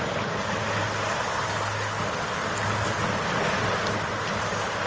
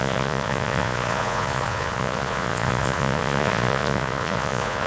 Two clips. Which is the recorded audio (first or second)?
first